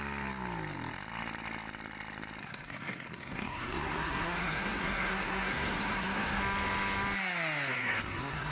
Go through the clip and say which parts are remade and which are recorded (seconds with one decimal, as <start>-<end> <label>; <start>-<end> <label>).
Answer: 0.0-2.4 recorded; 2.4-6.4 remade; 6.4-7.7 recorded; 7.7-8.5 remade